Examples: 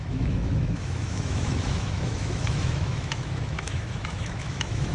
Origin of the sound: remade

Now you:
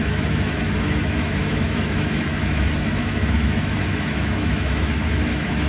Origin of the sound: remade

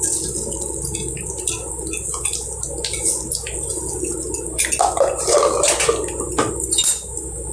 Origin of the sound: recorded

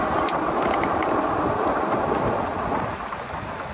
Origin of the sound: recorded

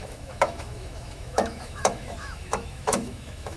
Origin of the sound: remade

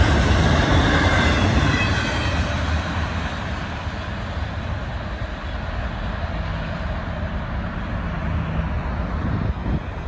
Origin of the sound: recorded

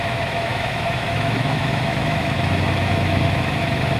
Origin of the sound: remade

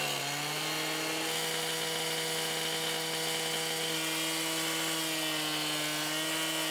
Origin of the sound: recorded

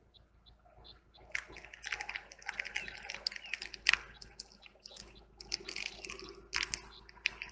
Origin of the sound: recorded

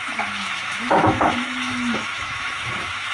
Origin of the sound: remade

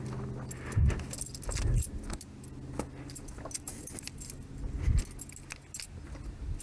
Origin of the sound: recorded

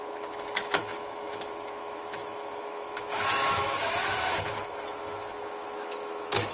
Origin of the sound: remade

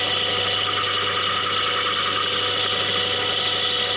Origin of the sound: recorded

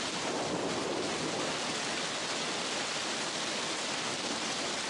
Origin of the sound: recorded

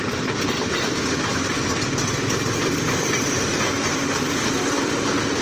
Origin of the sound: recorded